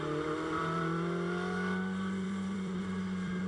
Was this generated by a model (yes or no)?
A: yes